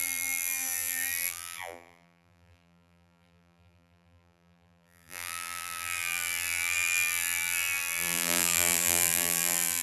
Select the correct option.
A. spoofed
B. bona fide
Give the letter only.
A